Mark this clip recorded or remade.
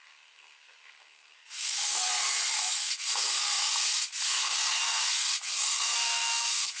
remade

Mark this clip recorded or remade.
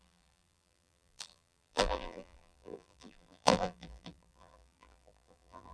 remade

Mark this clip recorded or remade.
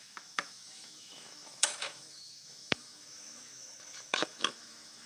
remade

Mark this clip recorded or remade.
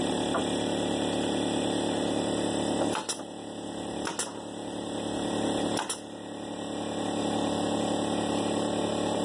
recorded